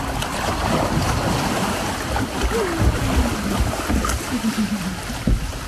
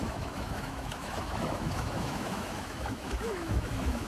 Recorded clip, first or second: first